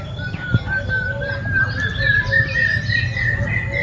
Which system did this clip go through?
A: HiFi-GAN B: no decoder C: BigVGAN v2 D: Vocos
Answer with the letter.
B